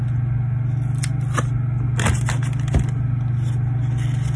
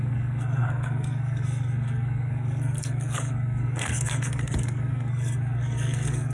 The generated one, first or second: second